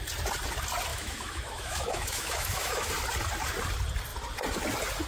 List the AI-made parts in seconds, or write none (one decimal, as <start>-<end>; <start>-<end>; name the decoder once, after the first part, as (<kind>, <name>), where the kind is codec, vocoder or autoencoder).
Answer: 0.9-2.9 (autoencoder, DAC-VAE)